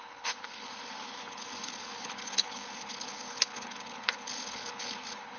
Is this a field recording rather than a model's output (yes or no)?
no